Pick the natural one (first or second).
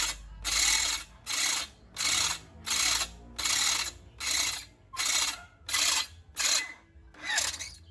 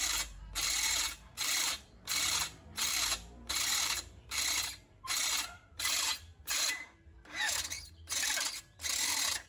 first